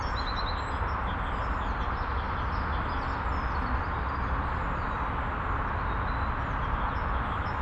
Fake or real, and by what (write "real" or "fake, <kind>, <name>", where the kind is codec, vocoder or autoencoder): real